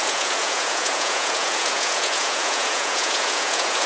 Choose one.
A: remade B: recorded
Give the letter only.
A